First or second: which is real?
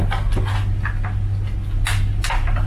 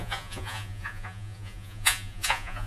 first